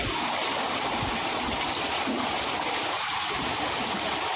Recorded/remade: remade